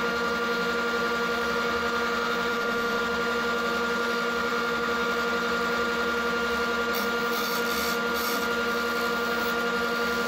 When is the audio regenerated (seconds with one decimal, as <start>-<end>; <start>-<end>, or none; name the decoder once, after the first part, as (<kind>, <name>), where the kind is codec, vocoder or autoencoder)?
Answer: 2.5-3.0 (autoencoder, DAC-VAE)